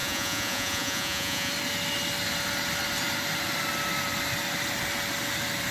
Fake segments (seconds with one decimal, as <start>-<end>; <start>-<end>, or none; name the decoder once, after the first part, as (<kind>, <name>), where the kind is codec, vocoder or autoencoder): 0.0-1.5 (vocoder, Vocos)